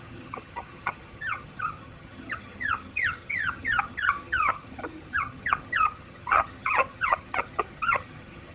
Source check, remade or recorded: remade